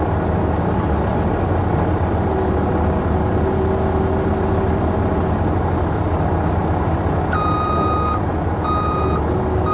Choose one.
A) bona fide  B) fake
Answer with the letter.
A